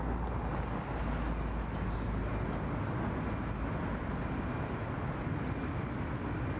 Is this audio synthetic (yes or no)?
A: no